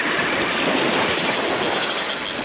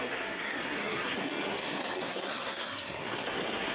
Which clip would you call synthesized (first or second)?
second